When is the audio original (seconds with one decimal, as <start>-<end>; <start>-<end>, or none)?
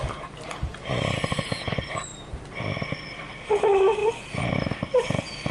2.1-2.6